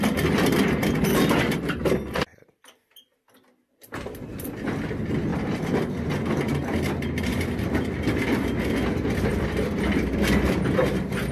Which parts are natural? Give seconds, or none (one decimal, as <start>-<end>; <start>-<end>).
0.0-5.3; 6.1-6.6; 8.5-9.3; 10.2-11.3